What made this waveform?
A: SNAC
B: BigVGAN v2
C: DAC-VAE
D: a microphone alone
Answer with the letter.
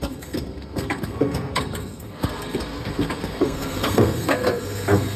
A